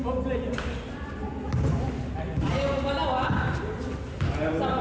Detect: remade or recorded recorded